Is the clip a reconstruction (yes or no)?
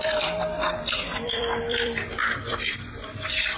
yes